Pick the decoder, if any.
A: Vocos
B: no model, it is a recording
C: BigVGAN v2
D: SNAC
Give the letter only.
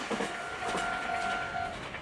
B